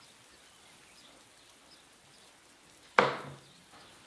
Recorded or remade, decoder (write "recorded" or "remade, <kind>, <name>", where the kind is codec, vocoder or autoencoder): recorded